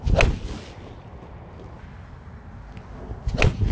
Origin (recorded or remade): recorded